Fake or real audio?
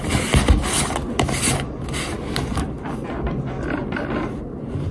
real